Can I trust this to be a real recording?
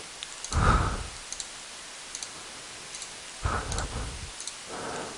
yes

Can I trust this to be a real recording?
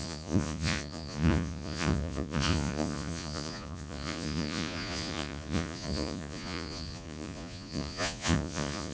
no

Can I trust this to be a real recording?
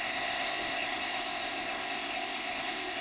no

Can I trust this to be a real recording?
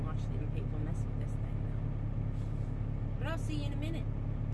yes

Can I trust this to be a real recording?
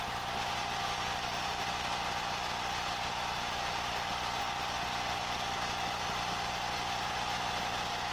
no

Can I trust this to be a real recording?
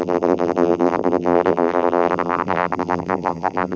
no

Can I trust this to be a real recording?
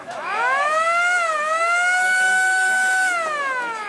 no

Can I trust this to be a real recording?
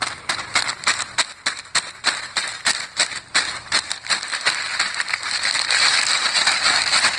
yes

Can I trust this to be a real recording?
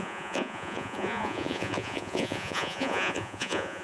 no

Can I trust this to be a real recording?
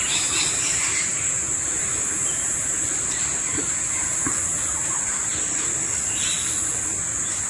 yes